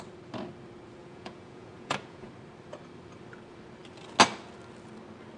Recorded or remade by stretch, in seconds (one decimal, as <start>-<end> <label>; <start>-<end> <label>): 0.0-1.0 recorded; 1.0-2.3 remade; 2.3-5.4 recorded